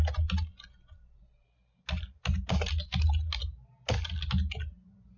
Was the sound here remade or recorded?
recorded